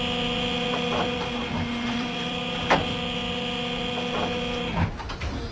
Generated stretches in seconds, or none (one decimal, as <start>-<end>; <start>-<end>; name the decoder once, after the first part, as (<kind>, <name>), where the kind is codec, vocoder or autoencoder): 1.4-2.6 (vocoder, BigVGAN v2)